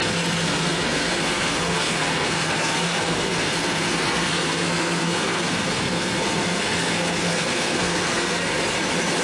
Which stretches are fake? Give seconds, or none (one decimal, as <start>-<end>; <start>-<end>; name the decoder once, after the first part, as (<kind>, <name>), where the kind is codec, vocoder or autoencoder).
0.0-8.5 (codec, SNAC)